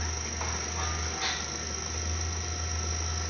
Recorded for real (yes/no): yes